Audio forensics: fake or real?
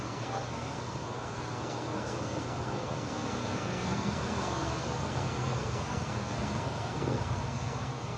fake